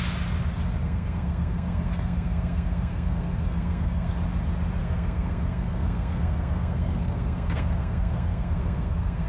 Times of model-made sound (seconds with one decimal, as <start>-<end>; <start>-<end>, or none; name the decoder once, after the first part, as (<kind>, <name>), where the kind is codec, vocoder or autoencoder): 0.8-4.1 (codec, SNAC); 4.8-9.3